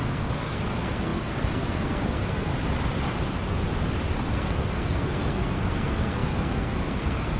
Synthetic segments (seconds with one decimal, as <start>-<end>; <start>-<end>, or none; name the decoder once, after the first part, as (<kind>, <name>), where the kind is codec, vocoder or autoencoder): 0.0-2.5 (codec, SNAC); 4.3-7.4